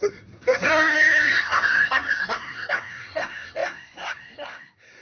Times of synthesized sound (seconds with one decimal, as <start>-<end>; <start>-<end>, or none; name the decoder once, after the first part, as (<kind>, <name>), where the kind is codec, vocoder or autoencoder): 0.0-5.0 (codec, SNAC)